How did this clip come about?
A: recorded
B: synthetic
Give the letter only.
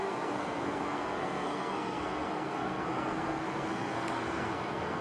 B